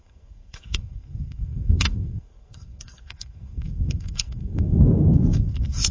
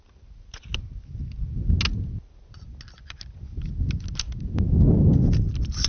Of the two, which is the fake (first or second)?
first